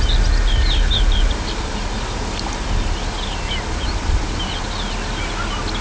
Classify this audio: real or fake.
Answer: real